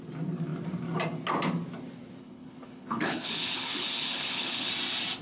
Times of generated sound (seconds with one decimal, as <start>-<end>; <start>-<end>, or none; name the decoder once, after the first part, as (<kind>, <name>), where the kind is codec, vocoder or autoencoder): 2.2-4.7 (codec, HILCodec)